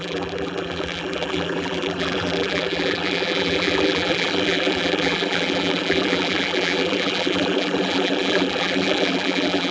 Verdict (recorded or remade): remade